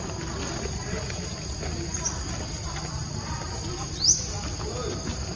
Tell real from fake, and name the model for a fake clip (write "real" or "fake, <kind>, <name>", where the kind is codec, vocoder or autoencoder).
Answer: real